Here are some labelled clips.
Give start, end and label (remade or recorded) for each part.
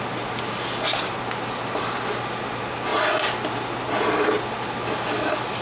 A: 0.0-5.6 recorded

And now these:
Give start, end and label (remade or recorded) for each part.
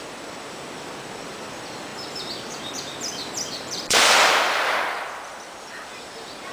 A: 0.0-6.5 remade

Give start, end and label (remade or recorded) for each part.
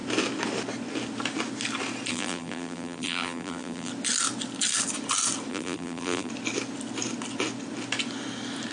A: 0.0-2.1 recorded; 2.1-3.9 remade; 3.9-5.5 recorded; 5.5-6.3 remade; 6.3-8.7 recorded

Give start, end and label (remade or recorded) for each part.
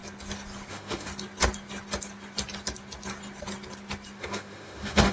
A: 0.0-0.7 recorded; 0.7-1.1 remade; 1.1-4.2 recorded; 4.2-5.1 remade